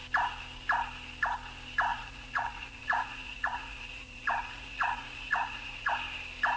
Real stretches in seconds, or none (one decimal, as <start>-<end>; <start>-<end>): 0.0-1.9; 5.9-6.6